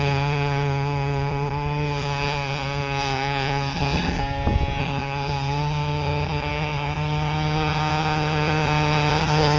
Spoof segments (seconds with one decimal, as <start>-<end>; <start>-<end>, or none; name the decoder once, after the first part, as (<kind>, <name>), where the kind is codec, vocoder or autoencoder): 0.0-4.2 (vocoder, HiFi-GAN); 4.8-9.6